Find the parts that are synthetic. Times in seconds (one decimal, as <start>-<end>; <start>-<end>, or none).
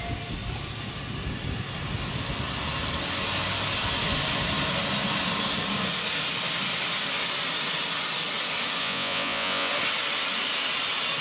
8.8-9.7